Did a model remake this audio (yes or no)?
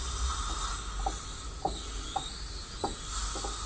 no